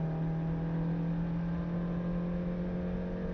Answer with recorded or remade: recorded